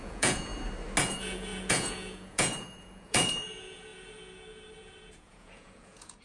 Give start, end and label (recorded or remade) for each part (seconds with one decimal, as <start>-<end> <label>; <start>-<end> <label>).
0.0-0.5 remade; 0.5-1.0 recorded; 1.0-6.2 remade